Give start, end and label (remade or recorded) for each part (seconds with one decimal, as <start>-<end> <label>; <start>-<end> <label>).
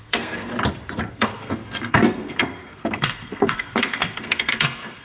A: 0.0-0.5 remade; 0.5-1.1 recorded; 1.1-5.0 remade